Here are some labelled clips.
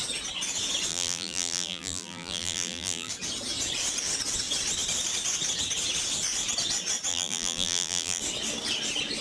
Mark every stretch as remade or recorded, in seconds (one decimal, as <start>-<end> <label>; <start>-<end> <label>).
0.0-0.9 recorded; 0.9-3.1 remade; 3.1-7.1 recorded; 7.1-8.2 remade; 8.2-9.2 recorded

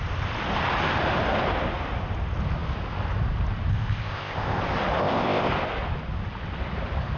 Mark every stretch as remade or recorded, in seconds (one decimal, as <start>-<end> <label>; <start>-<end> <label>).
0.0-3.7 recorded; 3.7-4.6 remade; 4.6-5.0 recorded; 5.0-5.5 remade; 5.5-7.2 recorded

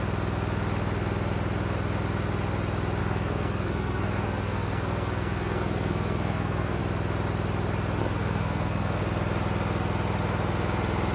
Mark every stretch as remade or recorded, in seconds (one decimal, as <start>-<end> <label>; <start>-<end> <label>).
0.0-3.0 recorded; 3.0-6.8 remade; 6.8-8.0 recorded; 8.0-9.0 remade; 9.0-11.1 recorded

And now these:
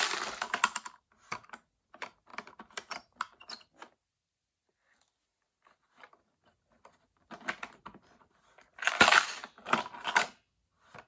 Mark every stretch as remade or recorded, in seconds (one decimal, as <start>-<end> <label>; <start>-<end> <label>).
0.0-11.1 recorded

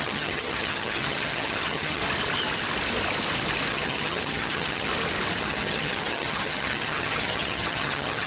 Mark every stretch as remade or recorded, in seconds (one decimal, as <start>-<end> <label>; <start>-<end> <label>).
0.0-2.0 remade; 2.0-3.7 recorded; 3.7-4.9 remade; 4.9-5.4 recorded; 5.4-8.3 remade